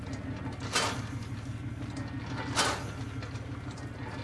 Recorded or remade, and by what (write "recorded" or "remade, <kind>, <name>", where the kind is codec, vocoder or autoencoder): recorded